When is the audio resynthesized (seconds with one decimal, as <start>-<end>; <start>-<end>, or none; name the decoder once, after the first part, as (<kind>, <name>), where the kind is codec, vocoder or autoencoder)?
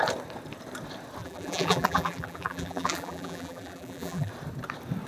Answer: 1.2-4.3 (vocoder, BigVGAN v2)